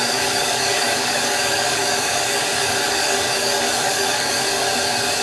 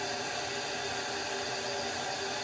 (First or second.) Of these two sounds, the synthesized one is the first